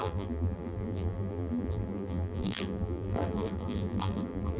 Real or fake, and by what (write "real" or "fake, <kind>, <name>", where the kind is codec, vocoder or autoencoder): fake, vocoder, BigVGAN v2